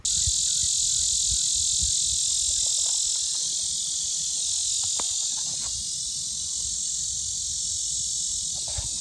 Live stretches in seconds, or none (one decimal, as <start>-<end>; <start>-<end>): 0.0-9.0